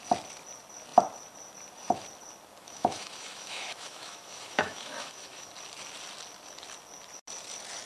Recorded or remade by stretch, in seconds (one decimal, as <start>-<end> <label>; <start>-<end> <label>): 0.0-2.6 recorded; 2.6-5.5 remade; 5.5-7.9 recorded